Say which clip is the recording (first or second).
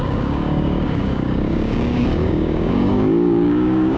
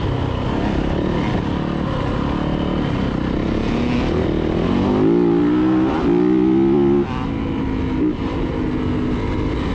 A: second